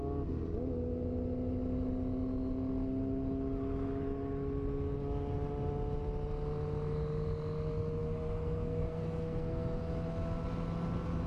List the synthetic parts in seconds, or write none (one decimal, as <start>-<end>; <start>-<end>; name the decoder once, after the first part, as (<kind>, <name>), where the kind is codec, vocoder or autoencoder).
8.0-9.8 (codec, SNAC)